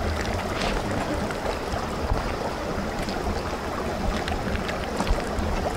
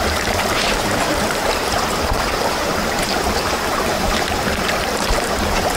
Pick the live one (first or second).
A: first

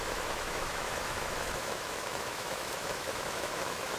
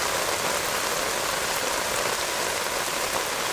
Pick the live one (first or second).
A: second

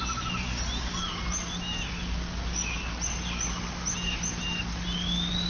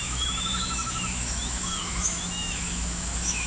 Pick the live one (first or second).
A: first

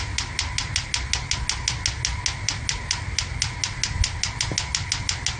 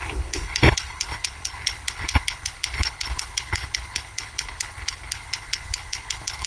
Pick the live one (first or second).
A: first